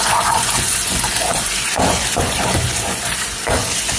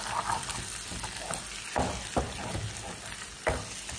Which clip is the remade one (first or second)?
first